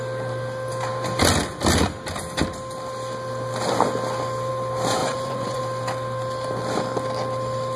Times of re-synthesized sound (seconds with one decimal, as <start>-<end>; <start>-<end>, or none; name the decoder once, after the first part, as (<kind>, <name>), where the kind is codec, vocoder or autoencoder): 5.0-5.6 (vocoder, Vocos)